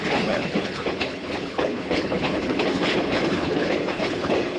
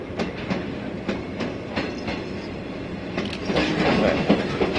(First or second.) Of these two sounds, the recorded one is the second